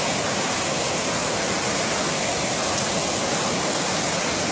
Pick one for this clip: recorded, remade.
recorded